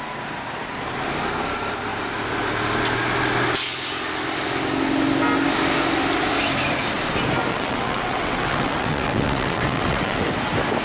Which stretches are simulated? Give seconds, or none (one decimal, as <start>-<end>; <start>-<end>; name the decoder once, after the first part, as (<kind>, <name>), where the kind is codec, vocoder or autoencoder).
7.5-10.2 (vocoder, WaveNeXt)